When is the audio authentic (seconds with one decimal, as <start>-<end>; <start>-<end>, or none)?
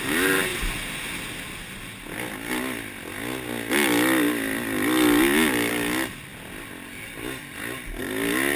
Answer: 0.0-8.6